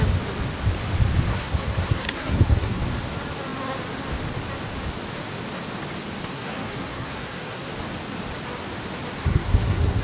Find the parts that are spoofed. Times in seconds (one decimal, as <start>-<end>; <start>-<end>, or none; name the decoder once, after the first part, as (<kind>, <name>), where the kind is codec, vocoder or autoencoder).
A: 1.3-2.8 (codec, SNAC); 6.2-7.7; 9.2-10.0